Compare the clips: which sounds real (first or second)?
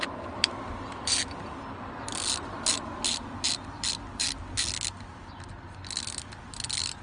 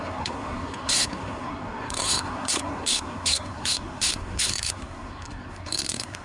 first